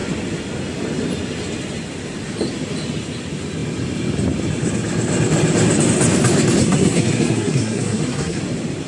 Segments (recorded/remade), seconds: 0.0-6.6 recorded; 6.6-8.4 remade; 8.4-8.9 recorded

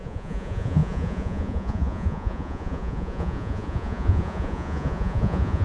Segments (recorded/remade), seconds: 0.0-5.6 remade

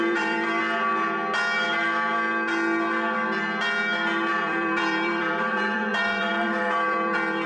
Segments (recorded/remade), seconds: 0.0-0.6 remade; 0.6-4.3 recorded; 4.3-7.5 remade

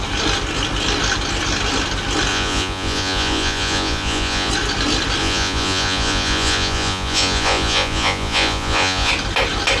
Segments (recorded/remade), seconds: 0.0-2.3 recorded; 2.3-4.5 remade; 4.5-5.2 recorded; 5.2-9.1 remade; 9.1-9.8 recorded

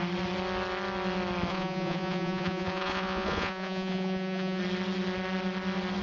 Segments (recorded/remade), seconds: 0.0-1.5 recorded; 1.5-4.6 remade; 4.6-6.0 recorded

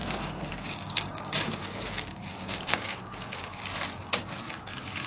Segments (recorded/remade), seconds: 0.0-3.7 remade; 3.7-4.5 recorded; 4.5-5.1 remade

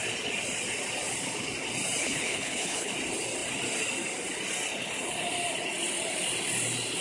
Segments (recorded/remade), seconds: 0.0-2.0 recorded; 2.0-2.9 remade; 2.9-7.0 recorded

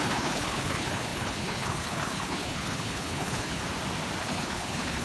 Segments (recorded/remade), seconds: 0.0-3.6 remade; 3.6-4.2 recorded; 4.2-5.0 remade